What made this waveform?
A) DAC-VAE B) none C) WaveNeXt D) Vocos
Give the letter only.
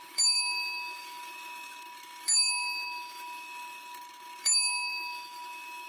A